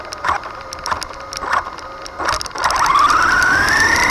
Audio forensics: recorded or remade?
recorded